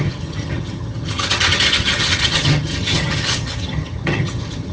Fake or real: fake